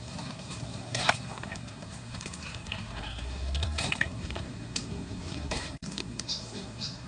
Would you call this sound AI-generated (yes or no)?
yes